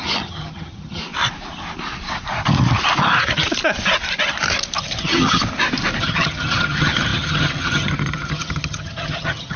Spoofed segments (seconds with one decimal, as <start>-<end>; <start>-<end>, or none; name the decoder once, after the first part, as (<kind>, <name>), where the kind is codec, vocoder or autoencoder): 0.0-1.0 (vocoder, HiFi-GAN); 5.0-5.4; 6.0-9.6